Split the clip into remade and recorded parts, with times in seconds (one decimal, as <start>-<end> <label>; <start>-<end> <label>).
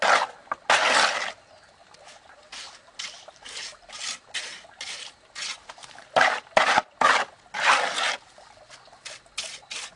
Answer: 0.0-1.8 recorded; 1.8-6.7 remade; 6.7-10.0 recorded